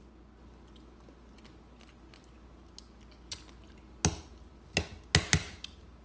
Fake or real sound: real